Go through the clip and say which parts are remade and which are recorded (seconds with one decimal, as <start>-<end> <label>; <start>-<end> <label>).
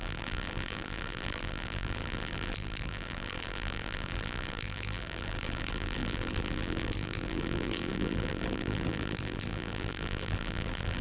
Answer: 0.0-11.0 remade